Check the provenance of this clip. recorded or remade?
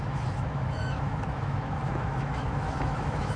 remade